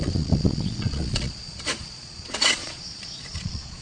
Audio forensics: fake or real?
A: fake